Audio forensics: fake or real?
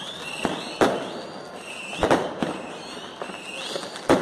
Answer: real